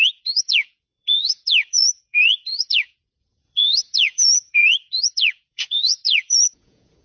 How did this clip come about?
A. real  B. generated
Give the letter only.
B